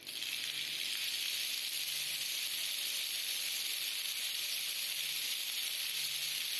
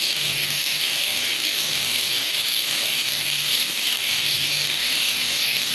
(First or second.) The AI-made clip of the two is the second